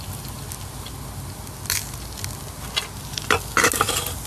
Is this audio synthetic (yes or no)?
no